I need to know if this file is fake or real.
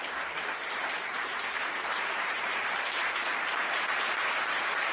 fake